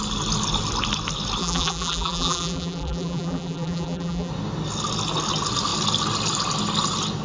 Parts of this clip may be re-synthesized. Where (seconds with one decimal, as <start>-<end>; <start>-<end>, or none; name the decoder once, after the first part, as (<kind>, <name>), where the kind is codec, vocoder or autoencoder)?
1.4-4.3 (vocoder, BigVGAN v2)

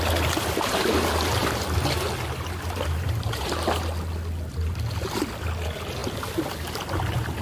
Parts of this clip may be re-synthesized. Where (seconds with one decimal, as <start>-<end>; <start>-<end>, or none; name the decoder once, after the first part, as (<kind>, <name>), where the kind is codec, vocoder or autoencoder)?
none

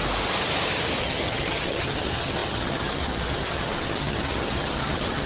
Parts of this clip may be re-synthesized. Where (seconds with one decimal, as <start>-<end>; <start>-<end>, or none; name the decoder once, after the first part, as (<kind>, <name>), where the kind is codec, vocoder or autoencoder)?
1.0-5.3 (vocoder, HiFi-GAN)

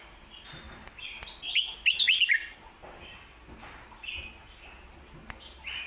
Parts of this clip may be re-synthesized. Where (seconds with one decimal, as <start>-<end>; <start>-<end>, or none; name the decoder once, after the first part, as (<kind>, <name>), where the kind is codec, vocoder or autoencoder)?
none

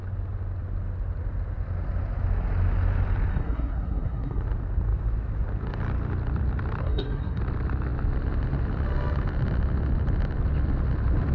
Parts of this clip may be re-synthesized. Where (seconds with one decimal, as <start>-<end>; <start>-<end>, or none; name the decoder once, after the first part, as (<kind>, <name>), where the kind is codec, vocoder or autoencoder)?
3.3-4.4 (codec, SNAC); 6.8-7.4

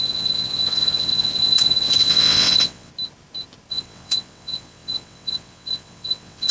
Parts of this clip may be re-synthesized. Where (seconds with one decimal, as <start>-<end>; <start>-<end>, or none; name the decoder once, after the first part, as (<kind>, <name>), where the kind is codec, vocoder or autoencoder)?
0.0-2.9 (vocoder, WaveNeXt); 3.7-6.5

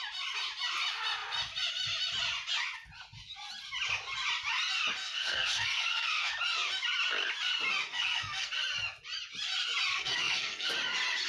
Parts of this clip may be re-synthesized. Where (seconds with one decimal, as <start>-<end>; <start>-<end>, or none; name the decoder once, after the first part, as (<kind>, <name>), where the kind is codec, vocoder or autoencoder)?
5.0-6.3 (codec, SNAC); 7.9-8.5; 9.9-10.7

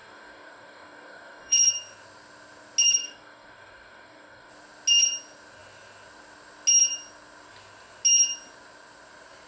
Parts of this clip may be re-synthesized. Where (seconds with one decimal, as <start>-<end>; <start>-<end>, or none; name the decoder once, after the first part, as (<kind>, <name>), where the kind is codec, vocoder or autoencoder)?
0.0-1.7 (codec, DAC); 2.8-4.5